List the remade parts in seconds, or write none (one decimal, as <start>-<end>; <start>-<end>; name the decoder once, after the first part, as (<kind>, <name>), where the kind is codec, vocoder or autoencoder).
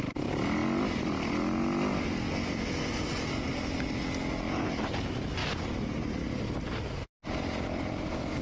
none